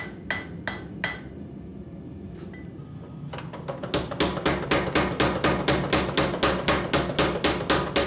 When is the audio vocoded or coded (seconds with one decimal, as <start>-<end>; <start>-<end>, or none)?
none